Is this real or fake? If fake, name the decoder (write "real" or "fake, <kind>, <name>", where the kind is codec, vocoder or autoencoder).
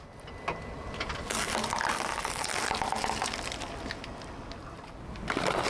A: real